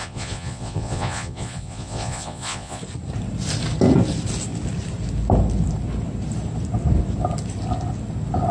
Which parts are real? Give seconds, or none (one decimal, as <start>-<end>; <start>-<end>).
2.8-8.5